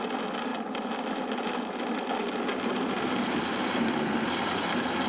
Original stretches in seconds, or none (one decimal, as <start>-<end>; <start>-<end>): 0.0-5.1